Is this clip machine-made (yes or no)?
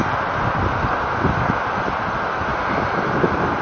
no